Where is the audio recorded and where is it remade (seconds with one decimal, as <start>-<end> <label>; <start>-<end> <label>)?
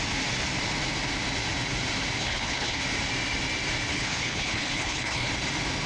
0.0-2.2 recorded; 2.2-2.8 remade; 2.8-3.9 recorded; 3.9-5.3 remade; 5.3-5.9 recorded